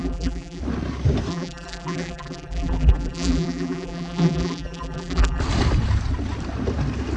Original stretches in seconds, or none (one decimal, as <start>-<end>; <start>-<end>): 0.6-1.3; 5.4-7.2